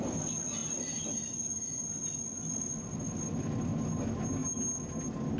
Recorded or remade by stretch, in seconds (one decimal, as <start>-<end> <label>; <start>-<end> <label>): 0.0-5.4 recorded